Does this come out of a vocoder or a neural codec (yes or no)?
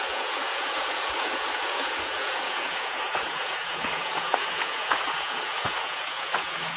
yes